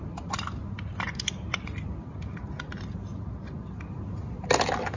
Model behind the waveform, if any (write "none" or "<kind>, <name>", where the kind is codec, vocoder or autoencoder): none